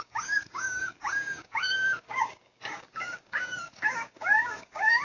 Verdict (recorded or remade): remade